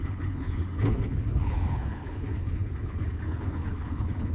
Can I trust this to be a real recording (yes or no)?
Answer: no